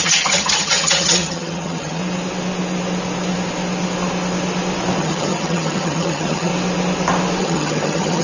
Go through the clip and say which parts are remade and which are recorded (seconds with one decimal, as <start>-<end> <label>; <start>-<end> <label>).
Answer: 0.0-2.0 remade; 2.0-5.0 recorded; 5.0-6.5 remade; 6.5-7.4 recorded; 7.4-8.2 remade